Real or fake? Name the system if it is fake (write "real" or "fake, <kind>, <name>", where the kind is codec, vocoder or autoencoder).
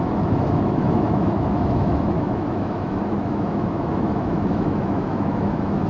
fake, autoencoder, DAC-VAE